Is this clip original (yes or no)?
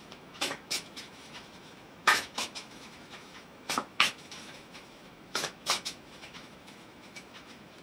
no